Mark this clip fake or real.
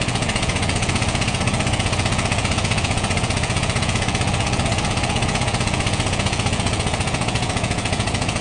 fake